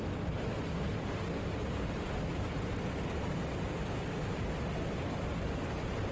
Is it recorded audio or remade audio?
recorded